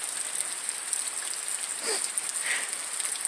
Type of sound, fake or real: real